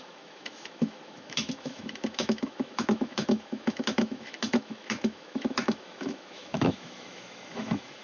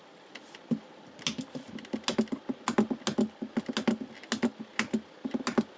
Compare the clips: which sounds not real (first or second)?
first